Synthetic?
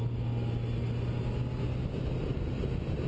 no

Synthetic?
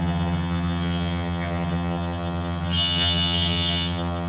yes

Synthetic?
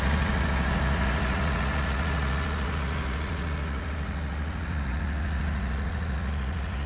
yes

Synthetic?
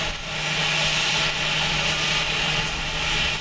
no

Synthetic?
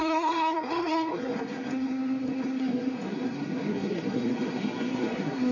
yes